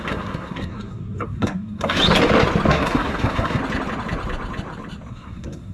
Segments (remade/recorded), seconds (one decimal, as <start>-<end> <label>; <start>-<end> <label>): 0.0-2.0 remade; 2.0-2.7 recorded; 2.7-3.6 remade; 3.6-5.1 recorded; 5.1-5.7 remade